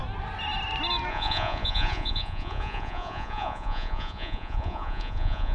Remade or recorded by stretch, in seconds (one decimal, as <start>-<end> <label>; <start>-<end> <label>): 0.0-1.1 recorded; 1.1-5.5 remade